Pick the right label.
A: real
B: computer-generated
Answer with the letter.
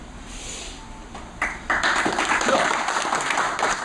B